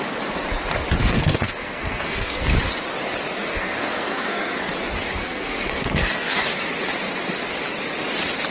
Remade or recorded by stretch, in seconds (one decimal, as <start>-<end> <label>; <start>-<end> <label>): 0.0-1.0 recorded; 1.0-2.5 remade; 2.5-3.5 recorded; 3.5-4.7 remade; 4.7-5.2 recorded; 5.2-6.4 remade; 6.4-8.5 recorded